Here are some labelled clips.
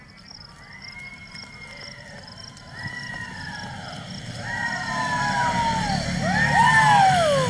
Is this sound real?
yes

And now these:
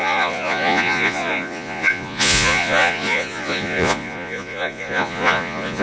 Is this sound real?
no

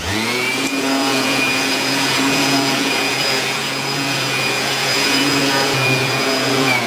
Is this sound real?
no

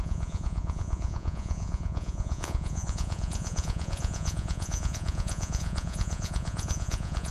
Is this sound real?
no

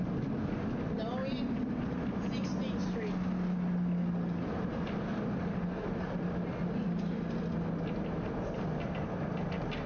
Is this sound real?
yes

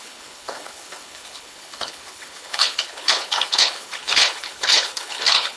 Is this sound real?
no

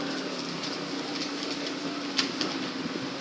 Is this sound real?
yes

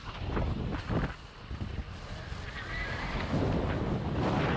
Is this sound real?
yes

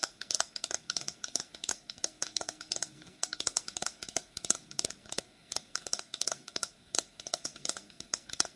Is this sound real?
no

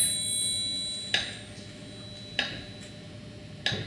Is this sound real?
yes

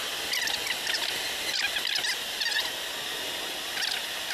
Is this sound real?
yes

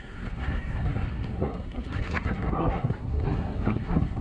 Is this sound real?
no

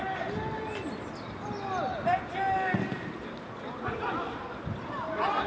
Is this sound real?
yes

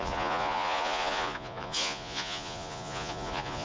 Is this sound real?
no